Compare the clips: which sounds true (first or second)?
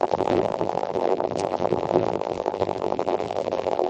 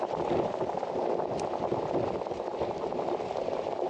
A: second